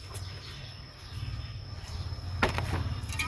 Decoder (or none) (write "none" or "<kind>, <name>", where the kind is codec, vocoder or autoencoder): vocoder, BigVGAN v2